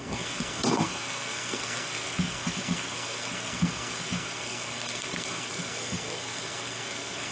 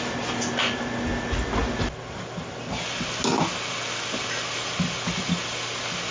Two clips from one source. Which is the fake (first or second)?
first